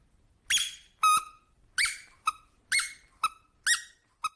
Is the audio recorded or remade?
recorded